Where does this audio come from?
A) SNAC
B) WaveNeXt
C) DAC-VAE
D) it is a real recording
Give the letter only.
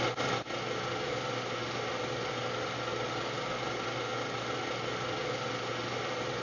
D